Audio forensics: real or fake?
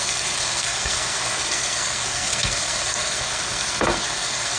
fake